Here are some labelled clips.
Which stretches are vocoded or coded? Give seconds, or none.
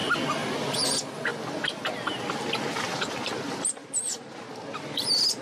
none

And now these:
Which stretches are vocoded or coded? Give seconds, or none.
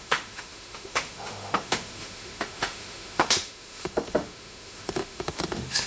0.0-5.9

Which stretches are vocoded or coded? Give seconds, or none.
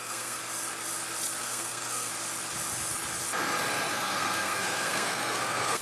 0.0-0.4; 1.4-2.1; 3.9-5.8